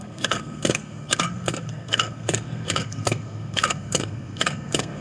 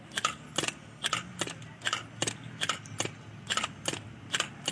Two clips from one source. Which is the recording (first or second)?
second